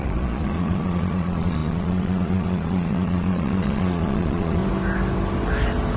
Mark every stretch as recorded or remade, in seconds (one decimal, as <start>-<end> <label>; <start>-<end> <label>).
0.0-4.6 remade; 4.6-6.0 recorded